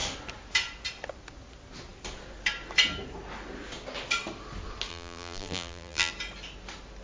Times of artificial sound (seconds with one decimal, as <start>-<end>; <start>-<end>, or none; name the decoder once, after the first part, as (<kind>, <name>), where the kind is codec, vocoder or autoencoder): 4.9-6.1 (vocoder, BigVGAN v2)